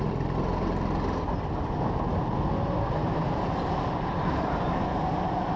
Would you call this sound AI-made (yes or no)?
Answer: no